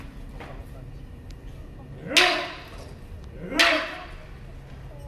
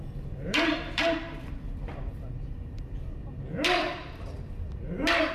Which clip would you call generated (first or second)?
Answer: second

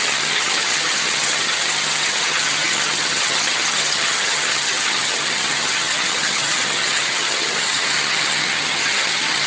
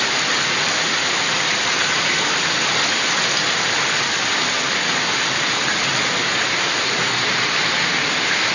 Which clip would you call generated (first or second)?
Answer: first